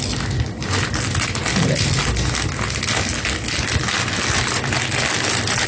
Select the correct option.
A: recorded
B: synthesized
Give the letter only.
A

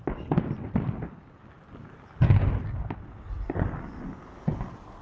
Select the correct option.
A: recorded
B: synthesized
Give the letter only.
A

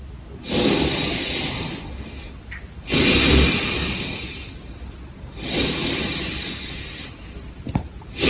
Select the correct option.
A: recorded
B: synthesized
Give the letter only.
A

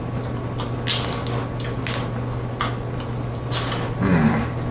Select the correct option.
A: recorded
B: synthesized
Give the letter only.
A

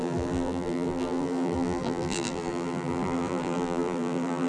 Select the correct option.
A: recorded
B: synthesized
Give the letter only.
B